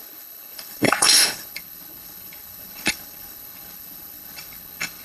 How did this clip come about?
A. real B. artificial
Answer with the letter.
B